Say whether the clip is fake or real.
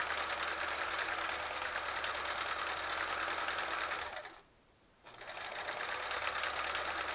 real